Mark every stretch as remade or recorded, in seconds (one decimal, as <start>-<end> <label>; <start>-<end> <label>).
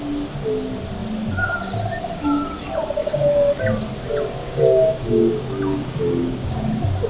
0.0-3.0 recorded; 3.0-3.6 remade; 3.6-4.4 recorded; 4.4-6.6 remade; 6.6-7.1 recorded